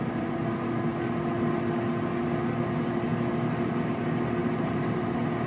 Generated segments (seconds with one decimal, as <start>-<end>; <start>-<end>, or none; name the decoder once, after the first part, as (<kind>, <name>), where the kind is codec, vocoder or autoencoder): 4.4-5.0 (vocoder, BigVGAN v2)